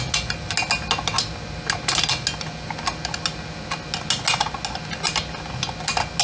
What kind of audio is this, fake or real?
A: real